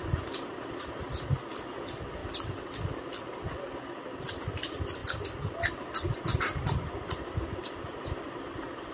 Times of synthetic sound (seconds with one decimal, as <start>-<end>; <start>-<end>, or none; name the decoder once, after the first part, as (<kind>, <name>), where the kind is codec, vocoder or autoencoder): none